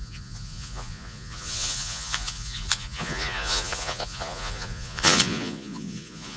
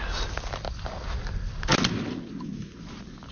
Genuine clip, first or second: second